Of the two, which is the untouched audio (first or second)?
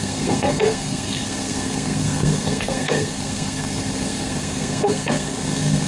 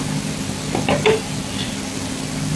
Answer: second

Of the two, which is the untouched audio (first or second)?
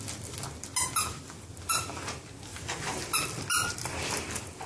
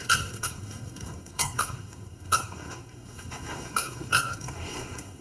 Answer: first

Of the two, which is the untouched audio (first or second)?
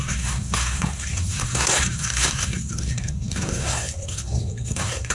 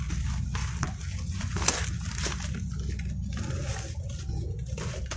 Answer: second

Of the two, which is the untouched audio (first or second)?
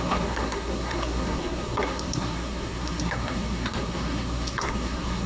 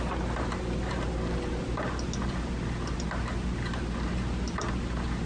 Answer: second